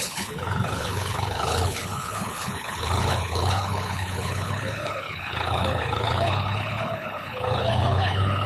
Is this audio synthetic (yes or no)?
yes